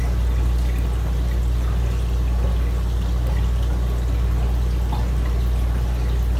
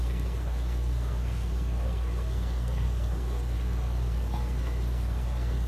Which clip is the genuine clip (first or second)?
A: first